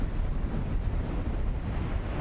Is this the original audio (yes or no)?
yes